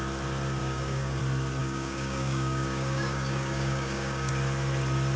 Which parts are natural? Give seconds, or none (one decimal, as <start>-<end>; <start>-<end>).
0.0-0.6; 1.2-1.6; 4.3-5.2